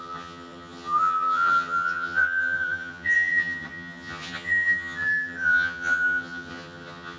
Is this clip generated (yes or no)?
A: yes